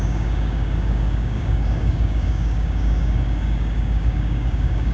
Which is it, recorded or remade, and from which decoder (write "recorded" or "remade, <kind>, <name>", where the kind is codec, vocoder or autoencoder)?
remade, codec, DAC